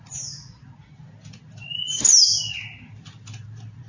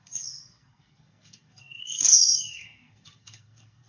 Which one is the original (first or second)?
first